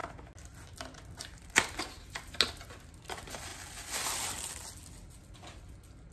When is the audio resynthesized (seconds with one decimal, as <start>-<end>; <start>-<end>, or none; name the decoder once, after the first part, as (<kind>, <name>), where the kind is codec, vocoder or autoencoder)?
none